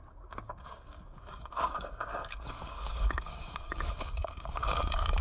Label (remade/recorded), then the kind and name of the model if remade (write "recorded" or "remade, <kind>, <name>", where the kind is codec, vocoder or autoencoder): remade, codec, DAC